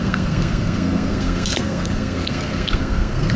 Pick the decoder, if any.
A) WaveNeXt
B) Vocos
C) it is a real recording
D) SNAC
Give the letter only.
D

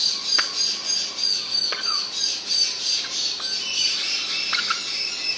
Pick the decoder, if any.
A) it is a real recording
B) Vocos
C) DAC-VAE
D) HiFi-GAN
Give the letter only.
A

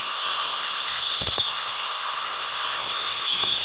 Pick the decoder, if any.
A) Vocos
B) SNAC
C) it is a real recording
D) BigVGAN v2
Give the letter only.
B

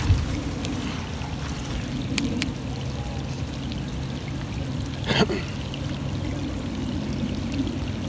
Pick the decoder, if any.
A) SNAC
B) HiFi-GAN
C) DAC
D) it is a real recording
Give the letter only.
D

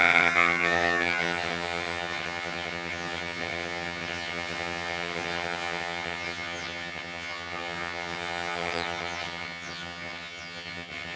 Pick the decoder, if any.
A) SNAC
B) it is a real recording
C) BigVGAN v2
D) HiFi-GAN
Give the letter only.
D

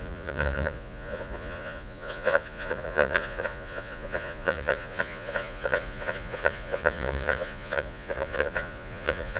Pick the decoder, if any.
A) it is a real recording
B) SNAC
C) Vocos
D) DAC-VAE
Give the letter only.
C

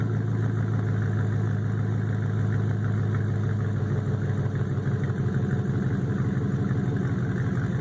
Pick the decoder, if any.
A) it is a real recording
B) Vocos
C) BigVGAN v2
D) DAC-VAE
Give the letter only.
A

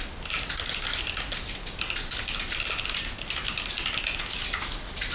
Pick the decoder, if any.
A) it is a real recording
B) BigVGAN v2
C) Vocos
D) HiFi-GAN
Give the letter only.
A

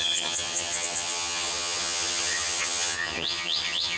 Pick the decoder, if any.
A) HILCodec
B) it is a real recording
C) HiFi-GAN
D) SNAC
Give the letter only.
C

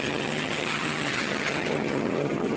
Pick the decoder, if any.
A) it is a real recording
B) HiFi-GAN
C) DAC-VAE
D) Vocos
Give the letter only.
B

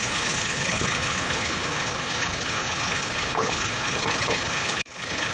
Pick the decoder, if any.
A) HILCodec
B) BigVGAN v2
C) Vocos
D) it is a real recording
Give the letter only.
A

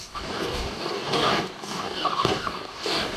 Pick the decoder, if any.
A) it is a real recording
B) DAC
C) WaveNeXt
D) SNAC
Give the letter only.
B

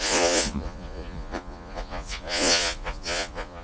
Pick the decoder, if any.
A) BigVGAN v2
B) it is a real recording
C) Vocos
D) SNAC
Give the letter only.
C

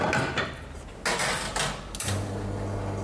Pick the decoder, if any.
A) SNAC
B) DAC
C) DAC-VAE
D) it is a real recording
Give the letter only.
D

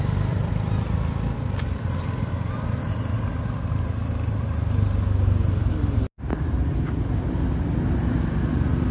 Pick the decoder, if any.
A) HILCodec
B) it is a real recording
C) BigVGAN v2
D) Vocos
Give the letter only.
B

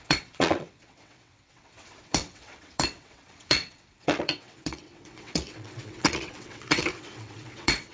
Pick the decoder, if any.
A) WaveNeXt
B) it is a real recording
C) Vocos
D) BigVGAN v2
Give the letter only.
A